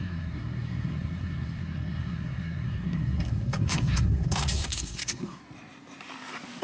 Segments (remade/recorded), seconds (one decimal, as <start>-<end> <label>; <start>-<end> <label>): 0.0-5.4 remade; 5.4-6.6 recorded